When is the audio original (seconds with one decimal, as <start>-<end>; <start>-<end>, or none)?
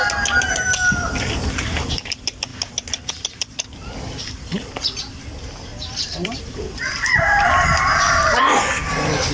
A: 0.0-2.5; 5.0-5.7; 8.9-9.3